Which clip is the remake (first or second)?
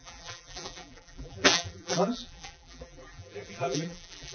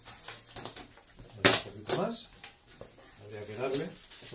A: first